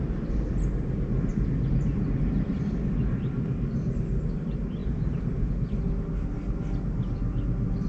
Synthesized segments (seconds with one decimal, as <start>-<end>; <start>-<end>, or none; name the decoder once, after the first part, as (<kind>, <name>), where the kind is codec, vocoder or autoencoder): 4.8-5.5 (vocoder, BigVGAN v2)